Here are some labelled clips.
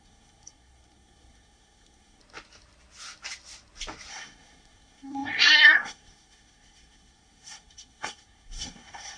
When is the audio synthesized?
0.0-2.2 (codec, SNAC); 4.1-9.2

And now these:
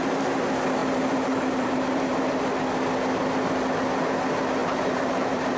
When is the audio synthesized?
0.8-2.4 (vocoder, BigVGAN v2); 4.6-5.6

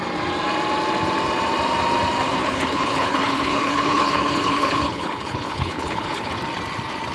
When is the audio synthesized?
2.4-6.3 (codec, HILCodec)

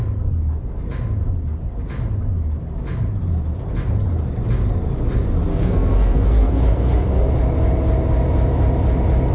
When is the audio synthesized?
5.5-7.3 (codec, SNAC)

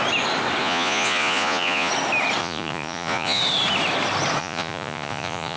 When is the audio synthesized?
0.6-1.9 (vocoder, Vocos); 2.4-3.4; 4.4-5.6

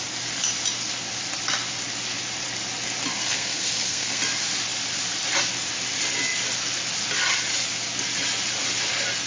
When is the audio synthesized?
3.1-4.2 (codec, SNAC)

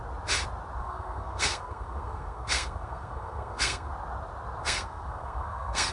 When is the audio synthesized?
0.8-3.9 (codec, SNAC); 4.6-5.9